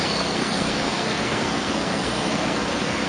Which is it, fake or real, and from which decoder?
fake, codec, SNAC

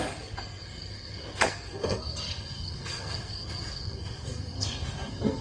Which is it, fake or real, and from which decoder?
fake, codec, SNAC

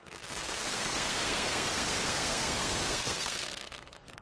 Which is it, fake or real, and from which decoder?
fake, codec, SNAC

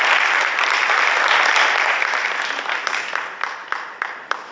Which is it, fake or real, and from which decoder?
real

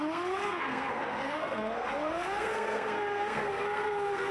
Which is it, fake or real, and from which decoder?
fake, codec, SNAC